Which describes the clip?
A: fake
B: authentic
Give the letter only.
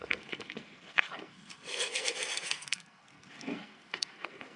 A